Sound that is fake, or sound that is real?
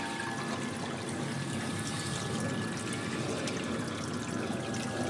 real